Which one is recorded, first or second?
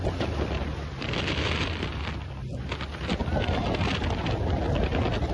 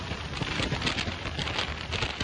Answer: first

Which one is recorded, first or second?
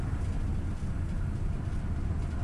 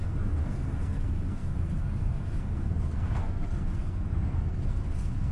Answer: first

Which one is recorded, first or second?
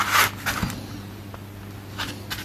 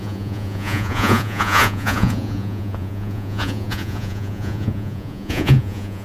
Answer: first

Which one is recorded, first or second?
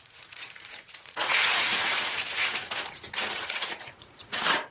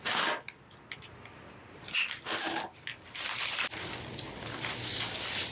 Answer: second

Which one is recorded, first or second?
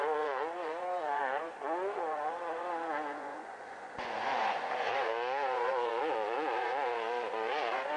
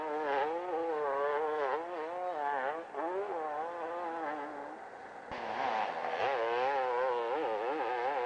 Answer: second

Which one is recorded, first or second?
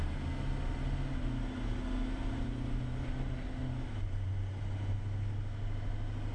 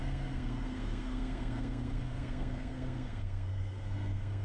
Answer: first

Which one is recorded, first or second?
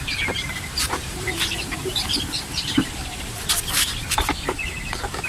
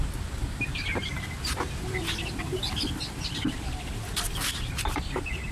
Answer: second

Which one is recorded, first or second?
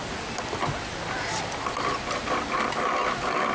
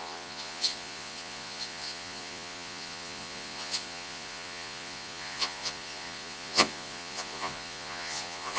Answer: first